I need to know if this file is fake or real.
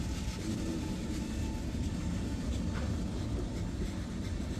real